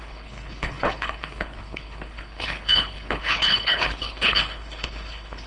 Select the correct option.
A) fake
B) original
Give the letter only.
A